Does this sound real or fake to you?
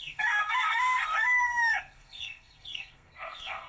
fake